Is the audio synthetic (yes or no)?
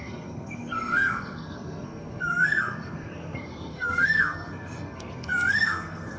yes